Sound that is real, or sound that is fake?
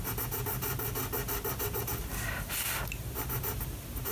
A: real